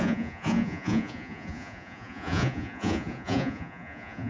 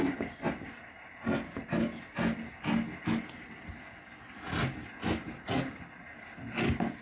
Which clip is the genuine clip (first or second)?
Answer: second